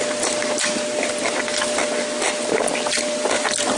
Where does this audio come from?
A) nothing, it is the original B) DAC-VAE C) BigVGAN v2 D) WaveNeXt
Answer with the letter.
C